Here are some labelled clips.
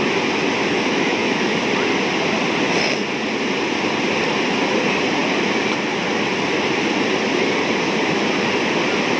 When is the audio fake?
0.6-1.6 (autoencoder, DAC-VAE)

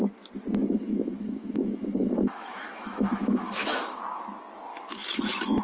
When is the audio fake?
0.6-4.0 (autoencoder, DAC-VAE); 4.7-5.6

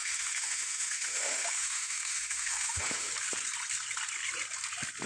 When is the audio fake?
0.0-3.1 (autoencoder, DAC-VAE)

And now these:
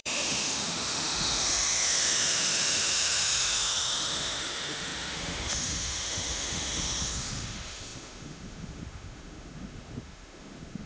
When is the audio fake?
0.0-10.9 (autoencoder, DAC-VAE)

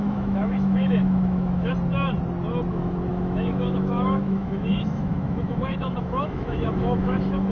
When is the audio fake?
0.0-1.7 (autoencoder, DAC-VAE); 2.7-7.5